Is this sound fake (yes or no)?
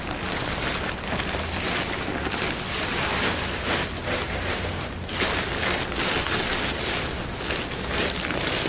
no